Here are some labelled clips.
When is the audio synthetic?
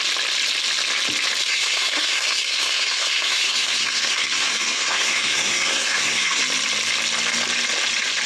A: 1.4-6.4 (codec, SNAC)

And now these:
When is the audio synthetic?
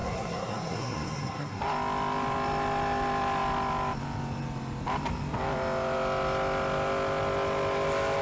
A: 0.0-1.6 (codec, SNAC)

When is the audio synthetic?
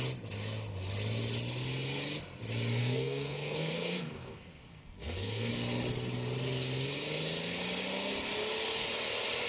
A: 2.8-5.5 (codec, SNAC)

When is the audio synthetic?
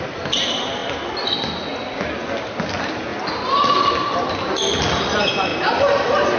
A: none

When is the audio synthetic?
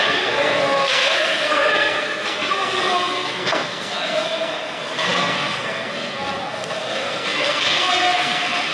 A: 0.0-8.7 (codec, SNAC)